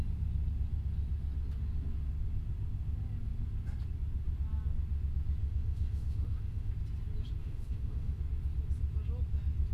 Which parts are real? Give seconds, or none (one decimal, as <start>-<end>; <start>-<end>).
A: 0.0-5.4; 6.7-7.4; 8.2-9.7